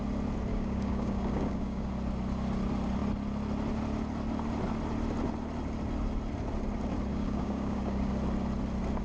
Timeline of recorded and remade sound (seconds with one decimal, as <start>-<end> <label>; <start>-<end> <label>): 0.0-0.5 recorded; 0.5-1.9 remade; 1.9-7.1 recorded; 7.1-8.1 remade; 8.1-9.0 recorded